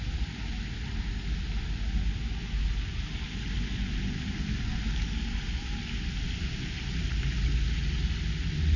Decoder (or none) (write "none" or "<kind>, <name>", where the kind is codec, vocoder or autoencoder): none